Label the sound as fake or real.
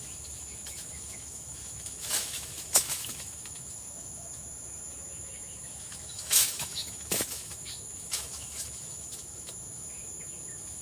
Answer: fake